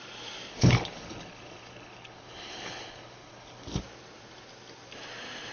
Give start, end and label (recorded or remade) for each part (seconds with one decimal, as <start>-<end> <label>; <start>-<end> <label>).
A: 0.0-0.5 recorded; 0.5-3.8 remade; 3.8-5.5 recorded